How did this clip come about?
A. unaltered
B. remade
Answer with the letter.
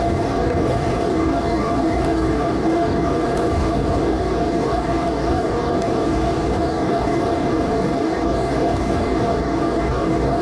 B